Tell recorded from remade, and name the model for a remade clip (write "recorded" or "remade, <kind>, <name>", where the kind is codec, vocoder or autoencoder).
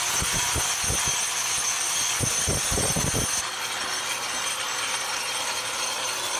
recorded